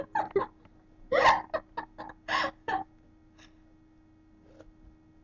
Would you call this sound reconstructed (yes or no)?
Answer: no